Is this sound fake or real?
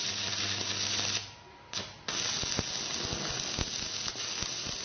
real